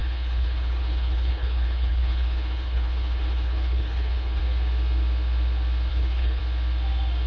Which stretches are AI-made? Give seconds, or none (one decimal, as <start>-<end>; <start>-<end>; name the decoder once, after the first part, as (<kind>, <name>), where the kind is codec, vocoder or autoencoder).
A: 0.0-4.4 (codec, HILCodec); 5.9-6.4